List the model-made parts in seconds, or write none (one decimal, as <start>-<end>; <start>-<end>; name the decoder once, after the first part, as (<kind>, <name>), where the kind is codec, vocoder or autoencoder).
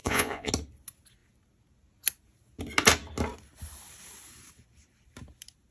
0.0-0.5 (vocoder, Vocos)